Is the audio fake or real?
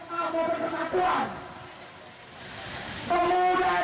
real